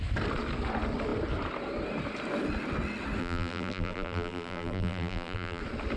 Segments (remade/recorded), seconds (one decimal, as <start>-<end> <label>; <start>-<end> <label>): 0.0-3.2 recorded; 3.2-5.6 remade; 5.6-6.0 recorded